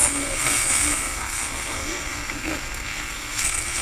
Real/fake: fake